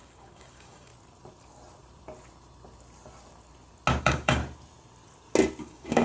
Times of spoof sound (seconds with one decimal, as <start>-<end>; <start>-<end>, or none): 0.0-0.9; 4.0-4.4; 5.6-6.0